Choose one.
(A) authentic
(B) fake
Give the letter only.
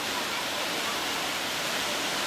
B